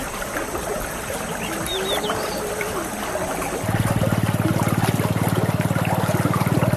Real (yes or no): yes